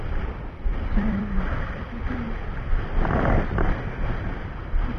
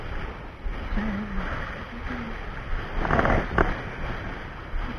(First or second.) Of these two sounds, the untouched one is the second